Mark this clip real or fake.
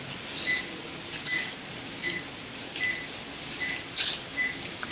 real